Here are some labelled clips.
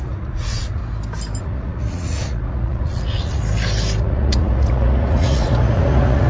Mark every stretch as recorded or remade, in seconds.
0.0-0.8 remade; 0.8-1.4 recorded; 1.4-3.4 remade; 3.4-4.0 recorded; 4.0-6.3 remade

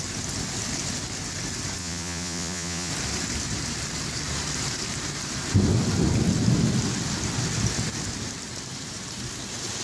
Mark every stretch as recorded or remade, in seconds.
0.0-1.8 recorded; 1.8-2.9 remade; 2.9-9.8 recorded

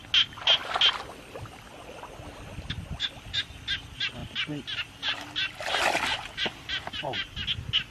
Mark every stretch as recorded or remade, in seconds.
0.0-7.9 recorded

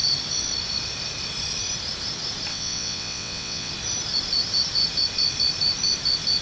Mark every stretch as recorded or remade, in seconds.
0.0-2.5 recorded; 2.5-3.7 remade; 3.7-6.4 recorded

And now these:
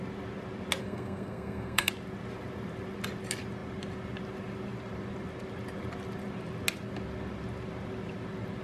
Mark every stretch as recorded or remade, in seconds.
0.0-0.8 recorded; 0.8-1.9 remade; 1.9-8.6 recorded